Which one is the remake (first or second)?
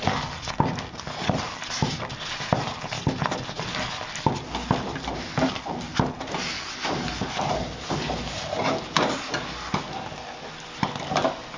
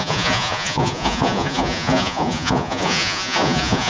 second